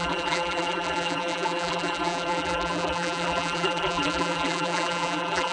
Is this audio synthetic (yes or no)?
yes